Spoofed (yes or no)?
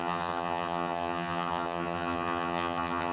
yes